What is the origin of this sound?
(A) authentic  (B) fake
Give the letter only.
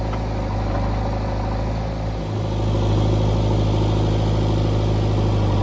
A